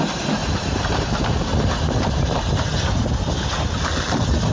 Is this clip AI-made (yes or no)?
no